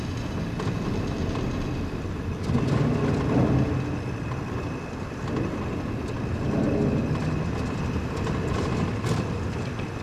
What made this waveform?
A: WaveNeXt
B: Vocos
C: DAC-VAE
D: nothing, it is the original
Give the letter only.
D